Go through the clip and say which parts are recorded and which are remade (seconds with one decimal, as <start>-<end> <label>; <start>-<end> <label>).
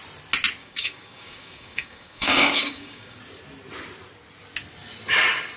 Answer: 0.0-0.6 recorded; 0.6-3.2 remade; 3.2-5.6 recorded